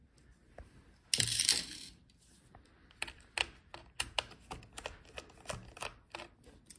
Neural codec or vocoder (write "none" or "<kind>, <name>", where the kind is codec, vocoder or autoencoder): none